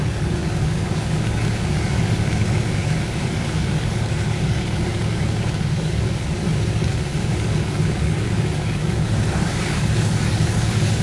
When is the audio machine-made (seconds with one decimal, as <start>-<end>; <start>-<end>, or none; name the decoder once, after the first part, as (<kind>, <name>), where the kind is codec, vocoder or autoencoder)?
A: 0.0-11.0 (codec, DAC)